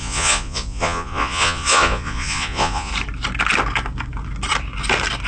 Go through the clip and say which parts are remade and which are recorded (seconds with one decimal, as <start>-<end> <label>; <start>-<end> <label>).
0.0-2.9 remade; 2.9-5.3 recorded

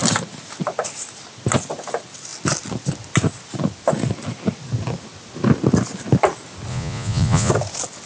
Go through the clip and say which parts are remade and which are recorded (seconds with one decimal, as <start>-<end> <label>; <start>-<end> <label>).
0.0-6.7 recorded; 6.7-7.5 remade; 7.5-8.1 recorded

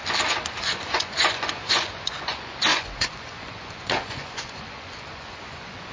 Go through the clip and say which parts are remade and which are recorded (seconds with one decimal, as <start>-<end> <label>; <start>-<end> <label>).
0.0-0.6 recorded; 0.6-5.9 remade

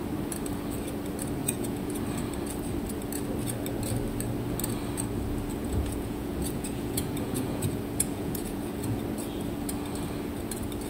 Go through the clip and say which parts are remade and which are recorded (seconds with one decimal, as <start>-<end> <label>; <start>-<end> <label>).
0.0-1.4 recorded; 1.4-1.9 remade; 1.9-5.6 recorded; 5.6-9.0 remade; 9.0-10.9 recorded

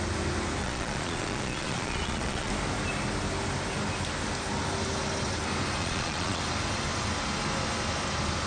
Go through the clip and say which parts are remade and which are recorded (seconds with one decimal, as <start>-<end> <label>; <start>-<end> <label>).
0.0-0.6 recorded; 0.6-2.5 remade; 2.5-5.8 recorded; 5.8-6.4 remade; 6.4-8.5 recorded

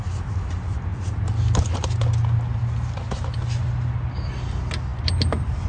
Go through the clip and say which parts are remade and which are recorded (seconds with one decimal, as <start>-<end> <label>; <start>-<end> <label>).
0.0-5.7 recorded

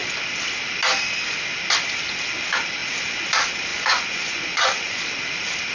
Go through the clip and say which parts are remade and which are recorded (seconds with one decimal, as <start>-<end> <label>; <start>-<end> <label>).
0.0-3.7 recorded; 3.7-5.0 remade; 5.0-5.7 recorded

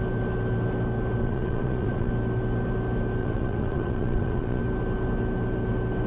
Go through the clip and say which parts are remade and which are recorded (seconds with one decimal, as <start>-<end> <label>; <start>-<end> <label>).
0.0-1.2 recorded; 1.2-2.1 remade; 2.1-3.2 recorded; 3.2-4.6 remade; 4.6-6.1 recorded